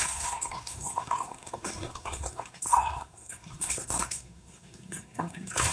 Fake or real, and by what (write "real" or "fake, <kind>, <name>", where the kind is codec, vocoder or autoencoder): fake, codec, SNAC